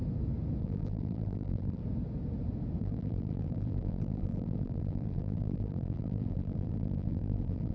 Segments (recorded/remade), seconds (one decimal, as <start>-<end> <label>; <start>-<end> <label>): 0.0-0.6 recorded; 0.6-1.8 remade; 1.8-2.8 recorded; 2.8-7.7 remade